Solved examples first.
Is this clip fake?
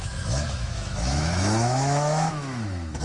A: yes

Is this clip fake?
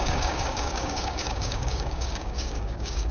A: yes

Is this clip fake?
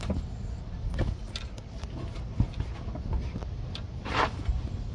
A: no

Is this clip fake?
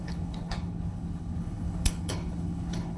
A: yes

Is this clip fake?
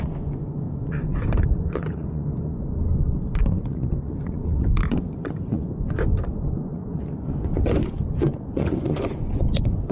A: yes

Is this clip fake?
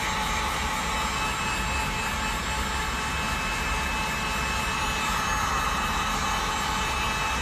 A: no